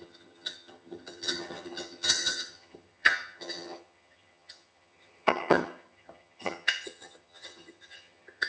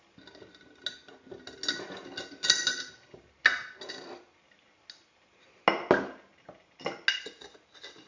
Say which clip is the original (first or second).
second